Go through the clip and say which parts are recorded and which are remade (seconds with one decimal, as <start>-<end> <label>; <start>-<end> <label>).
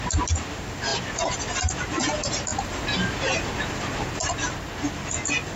0.0-0.9 recorded; 0.9-1.4 remade; 1.4-5.6 recorded